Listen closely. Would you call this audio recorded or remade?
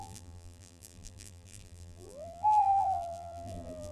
remade